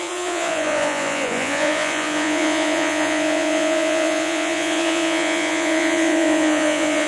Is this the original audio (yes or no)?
no